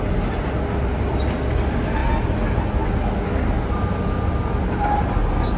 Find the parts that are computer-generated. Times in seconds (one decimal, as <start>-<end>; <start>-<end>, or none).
none